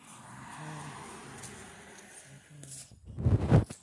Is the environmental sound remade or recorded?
recorded